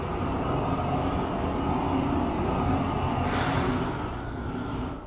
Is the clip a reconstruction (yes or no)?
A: no